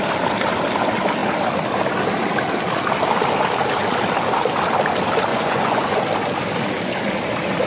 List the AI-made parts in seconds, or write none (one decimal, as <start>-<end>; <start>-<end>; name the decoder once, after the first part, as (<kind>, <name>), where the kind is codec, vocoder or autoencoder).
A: 5.3-6.0 (vocoder, Vocos)